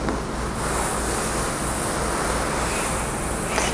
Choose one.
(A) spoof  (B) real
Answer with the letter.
B